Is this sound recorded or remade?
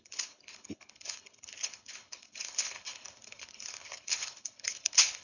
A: remade